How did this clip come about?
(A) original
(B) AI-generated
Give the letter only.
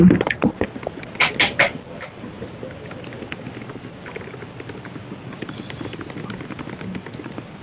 A